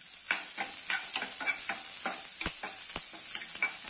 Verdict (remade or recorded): recorded